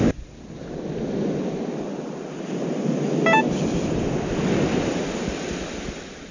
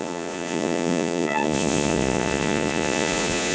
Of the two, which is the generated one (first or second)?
second